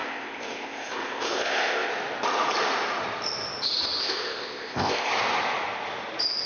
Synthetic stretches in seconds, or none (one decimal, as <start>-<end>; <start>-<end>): 0.0-1.9; 4.0-5.1